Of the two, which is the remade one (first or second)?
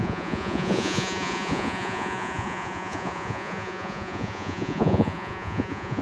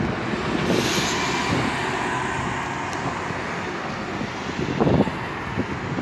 first